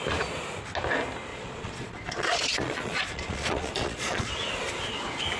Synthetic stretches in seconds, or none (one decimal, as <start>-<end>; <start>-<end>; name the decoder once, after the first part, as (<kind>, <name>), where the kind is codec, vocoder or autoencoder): 1.3-4.5 (vocoder, Vocos)